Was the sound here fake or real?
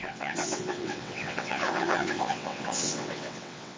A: fake